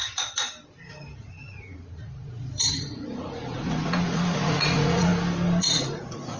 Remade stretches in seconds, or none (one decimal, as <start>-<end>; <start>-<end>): 1.2-5.1; 5.6-6.4

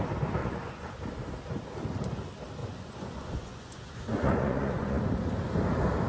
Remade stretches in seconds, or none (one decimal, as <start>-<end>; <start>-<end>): 0.4-0.9; 2.6-5.0

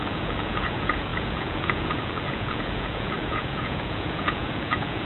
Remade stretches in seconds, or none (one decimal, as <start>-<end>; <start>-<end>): 0.0-5.1

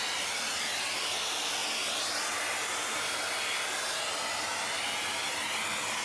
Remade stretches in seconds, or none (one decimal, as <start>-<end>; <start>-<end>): none

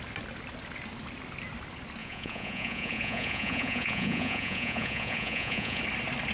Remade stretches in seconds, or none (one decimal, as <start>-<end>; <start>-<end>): 2.0-5.8

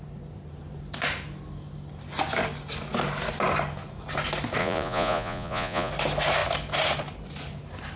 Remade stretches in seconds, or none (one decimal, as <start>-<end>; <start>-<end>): 4.6-5.9

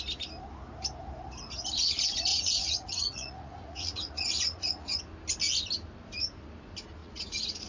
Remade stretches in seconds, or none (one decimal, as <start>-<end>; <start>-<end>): 2.3-5.0; 7.0-7.7

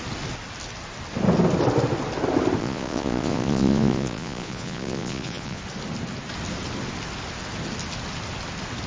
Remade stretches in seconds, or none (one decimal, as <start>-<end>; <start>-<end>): 2.6-5.6